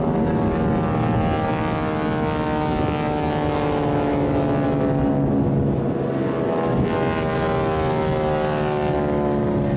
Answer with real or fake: real